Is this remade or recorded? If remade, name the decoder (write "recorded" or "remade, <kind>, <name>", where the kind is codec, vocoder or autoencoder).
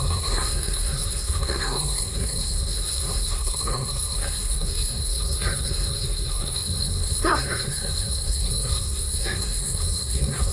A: remade, codec, SNAC